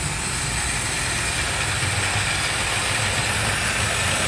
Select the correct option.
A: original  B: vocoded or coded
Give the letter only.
A